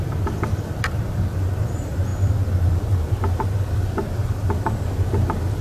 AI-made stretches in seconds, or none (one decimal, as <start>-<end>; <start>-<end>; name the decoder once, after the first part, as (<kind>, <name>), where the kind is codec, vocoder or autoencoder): none